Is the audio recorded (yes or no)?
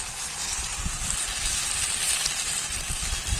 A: yes